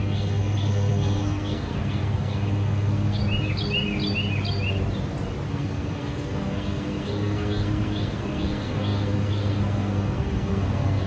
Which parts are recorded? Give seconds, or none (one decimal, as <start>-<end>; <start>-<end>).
3.2-5.5